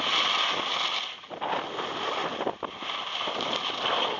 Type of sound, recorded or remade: recorded